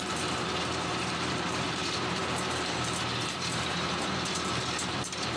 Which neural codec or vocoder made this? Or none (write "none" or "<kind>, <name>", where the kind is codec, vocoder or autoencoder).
vocoder, BigVGAN v2